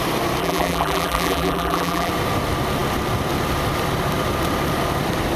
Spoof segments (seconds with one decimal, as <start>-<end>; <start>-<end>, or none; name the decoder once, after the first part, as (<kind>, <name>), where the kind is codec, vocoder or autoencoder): 0.4-2.1 (vocoder, BigVGAN v2)